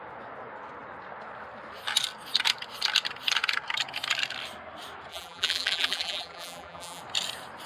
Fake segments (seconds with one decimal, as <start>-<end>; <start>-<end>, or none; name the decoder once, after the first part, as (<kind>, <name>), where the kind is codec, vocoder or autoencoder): 5.1-7.0 (vocoder, BigVGAN v2)